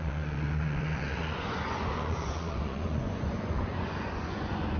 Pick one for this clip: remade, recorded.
remade